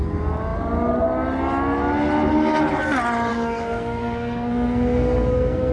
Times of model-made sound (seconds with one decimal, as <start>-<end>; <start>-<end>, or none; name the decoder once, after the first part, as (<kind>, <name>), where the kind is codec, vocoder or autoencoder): 3.3-5.7 (codec, SNAC)

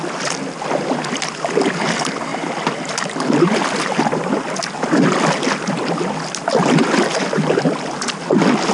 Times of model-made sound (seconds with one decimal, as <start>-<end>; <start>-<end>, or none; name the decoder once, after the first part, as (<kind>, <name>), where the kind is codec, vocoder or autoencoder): none

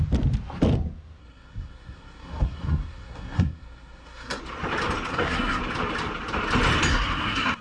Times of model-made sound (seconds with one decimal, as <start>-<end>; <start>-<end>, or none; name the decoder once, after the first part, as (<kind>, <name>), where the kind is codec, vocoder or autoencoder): 1.2-4.4 (codec, SNAC); 5.1-5.6; 6.9-7.6

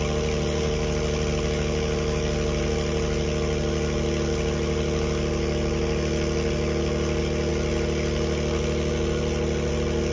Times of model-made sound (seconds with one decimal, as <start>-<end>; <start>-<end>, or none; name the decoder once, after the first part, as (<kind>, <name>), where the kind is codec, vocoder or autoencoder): none

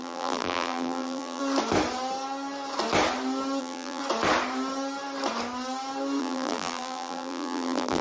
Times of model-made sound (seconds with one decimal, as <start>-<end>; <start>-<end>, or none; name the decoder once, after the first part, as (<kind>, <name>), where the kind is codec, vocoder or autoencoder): 0.0-1.4 (vocoder, BigVGAN v2); 3.6-4.0; 6.2-8.0

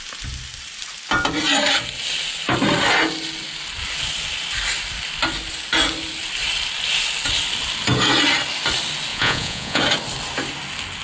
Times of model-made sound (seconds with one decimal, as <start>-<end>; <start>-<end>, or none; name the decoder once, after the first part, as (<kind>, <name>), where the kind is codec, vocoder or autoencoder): 9.1-9.8 (vocoder, Vocos)